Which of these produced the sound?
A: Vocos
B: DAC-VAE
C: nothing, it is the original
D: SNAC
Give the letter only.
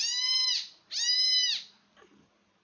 C